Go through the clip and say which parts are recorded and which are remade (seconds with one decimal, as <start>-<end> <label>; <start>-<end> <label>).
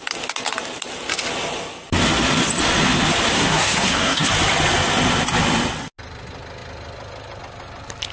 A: 0.0-3.3 recorded; 3.3-4.3 remade; 4.3-8.1 recorded